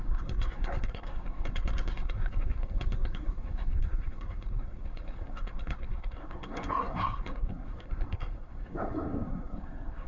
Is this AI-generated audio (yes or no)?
yes